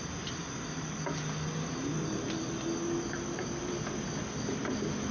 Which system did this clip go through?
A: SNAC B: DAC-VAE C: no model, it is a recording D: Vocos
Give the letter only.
C